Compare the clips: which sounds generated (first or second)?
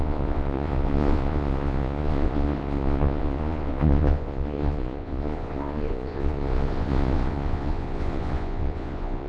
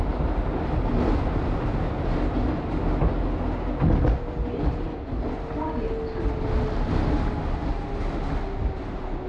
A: first